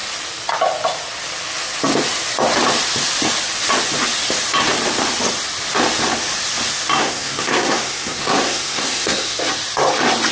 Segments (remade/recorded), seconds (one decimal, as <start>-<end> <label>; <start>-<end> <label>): 0.0-7.0 recorded; 7.0-9.4 remade; 9.4-10.3 recorded

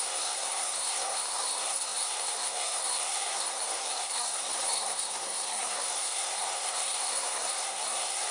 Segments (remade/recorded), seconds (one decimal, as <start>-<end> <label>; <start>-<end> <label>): 0.0-8.3 remade

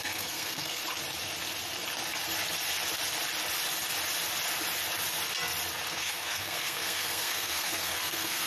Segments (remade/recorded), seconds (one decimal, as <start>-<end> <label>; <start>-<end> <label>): 0.0-0.8 remade; 0.8-5.9 recorded; 5.9-8.5 remade